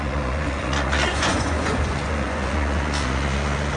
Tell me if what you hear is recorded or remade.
remade